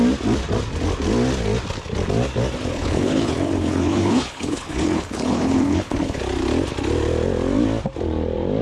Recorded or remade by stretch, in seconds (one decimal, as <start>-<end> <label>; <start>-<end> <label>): 0.0-2.7 recorded; 2.7-6.2 remade; 6.2-8.6 recorded